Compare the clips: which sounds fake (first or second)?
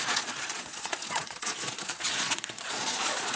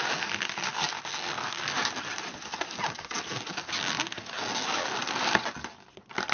first